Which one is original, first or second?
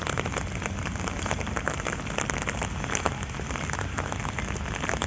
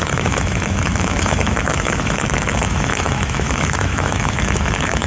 first